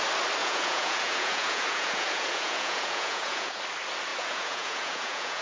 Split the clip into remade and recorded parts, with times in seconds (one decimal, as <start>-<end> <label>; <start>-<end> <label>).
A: 0.0-0.4 recorded; 0.4-3.6 remade; 3.6-4.1 recorded; 4.1-5.4 remade